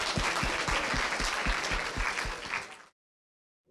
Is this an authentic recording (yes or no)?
yes